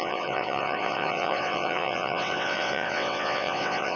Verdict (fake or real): fake